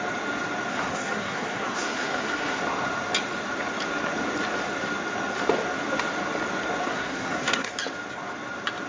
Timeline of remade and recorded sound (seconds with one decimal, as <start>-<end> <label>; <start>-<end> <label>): 0.0-0.7 recorded; 0.7-2.6 remade; 2.6-6.8 recorded; 6.8-7.7 remade; 7.7-8.9 recorded